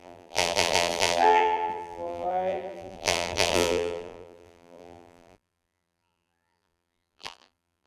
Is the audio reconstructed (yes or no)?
yes